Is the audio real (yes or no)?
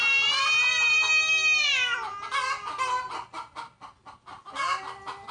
yes